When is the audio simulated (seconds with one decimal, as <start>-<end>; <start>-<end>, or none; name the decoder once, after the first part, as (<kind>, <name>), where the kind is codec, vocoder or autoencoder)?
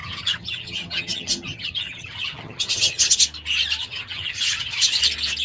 0.0-3.2 (vocoder, HiFi-GAN); 3.8-5.0